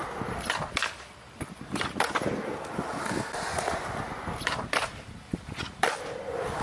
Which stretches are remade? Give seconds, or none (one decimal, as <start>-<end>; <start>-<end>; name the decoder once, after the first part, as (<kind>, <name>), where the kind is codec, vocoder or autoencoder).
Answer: none